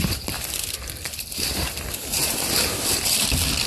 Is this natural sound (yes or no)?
no